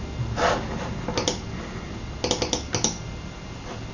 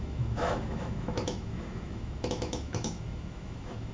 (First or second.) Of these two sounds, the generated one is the second